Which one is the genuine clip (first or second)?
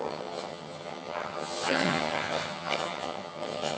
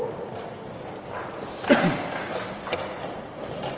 second